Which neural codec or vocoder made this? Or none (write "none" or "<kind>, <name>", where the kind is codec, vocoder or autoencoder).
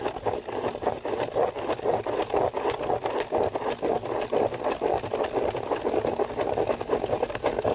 none